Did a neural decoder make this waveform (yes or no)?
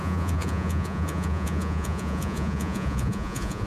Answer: yes